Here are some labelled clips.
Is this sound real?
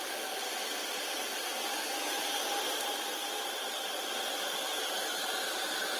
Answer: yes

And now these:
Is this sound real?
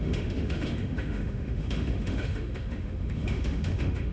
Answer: no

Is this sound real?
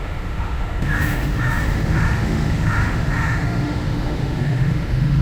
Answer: no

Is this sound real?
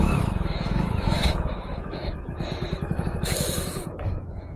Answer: no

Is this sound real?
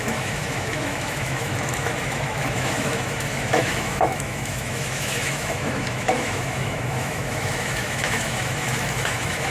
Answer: no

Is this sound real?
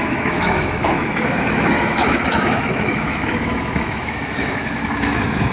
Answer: no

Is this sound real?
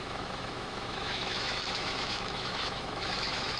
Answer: no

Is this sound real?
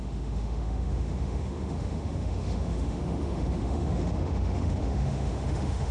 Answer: no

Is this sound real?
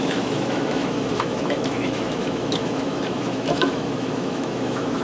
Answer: no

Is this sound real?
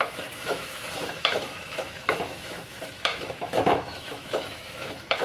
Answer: no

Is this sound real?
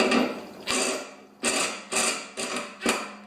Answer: yes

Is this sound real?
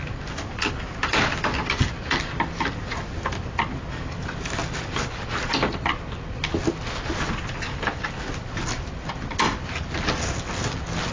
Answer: yes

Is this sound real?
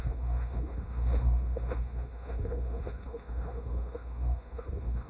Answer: no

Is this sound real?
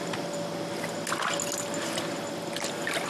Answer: yes